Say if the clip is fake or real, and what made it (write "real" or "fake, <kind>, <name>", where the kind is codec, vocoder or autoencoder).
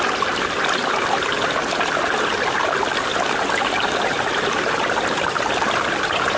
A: real